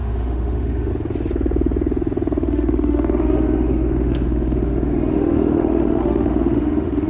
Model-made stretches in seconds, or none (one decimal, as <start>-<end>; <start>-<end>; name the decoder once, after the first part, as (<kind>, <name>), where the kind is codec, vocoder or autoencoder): 0.0-0.9 (autoencoder, DAC-VAE); 2.4-7.1